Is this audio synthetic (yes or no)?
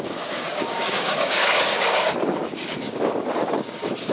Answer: yes